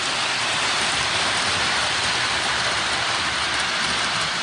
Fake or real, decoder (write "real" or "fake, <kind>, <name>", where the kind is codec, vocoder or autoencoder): fake, vocoder, BigVGAN v2